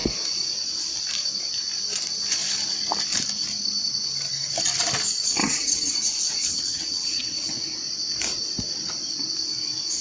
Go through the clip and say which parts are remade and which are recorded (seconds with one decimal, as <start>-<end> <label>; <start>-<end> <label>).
0.0-5.4 recorded; 5.4-5.9 remade; 5.9-6.4 recorded; 6.4-7.5 remade; 7.5-10.0 recorded